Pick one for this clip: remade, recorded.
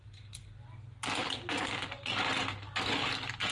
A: recorded